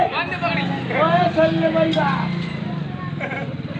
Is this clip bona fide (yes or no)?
yes